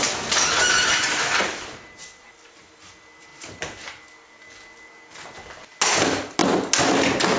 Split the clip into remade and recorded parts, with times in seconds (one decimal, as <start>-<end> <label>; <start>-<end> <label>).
0.0-7.4 recorded